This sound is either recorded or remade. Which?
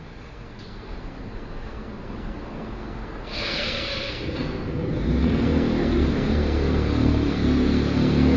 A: remade